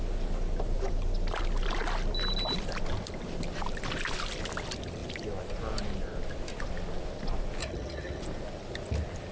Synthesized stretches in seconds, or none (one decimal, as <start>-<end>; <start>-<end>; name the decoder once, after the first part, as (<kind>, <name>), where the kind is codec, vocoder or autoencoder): 7.6-8.2 (vocoder, HiFi-GAN)